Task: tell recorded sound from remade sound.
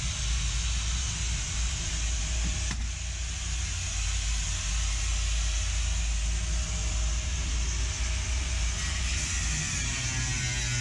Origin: recorded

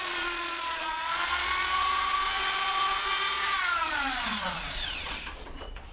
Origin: remade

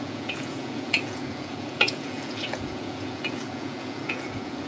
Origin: remade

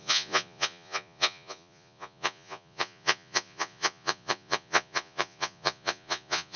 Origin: remade